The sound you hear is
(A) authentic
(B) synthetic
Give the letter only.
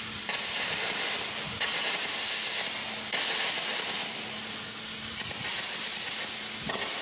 B